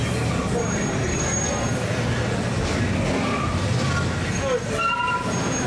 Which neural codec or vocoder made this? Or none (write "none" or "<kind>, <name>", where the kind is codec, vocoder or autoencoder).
none